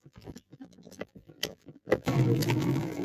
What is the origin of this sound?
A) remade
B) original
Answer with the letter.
A